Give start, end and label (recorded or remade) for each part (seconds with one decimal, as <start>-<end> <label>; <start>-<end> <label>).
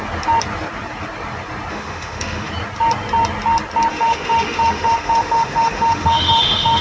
0.0-1.7 recorded; 1.7-2.5 remade; 2.5-3.9 recorded; 3.9-6.8 remade